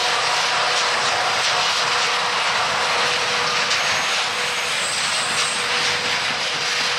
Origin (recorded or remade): recorded